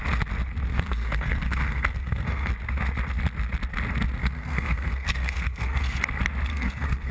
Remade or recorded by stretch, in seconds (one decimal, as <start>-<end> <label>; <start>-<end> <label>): 0.0-0.7 recorded; 0.7-2.5 remade; 2.5-4.2 recorded; 4.2-6.0 remade; 6.0-6.5 recorded; 6.5-7.1 remade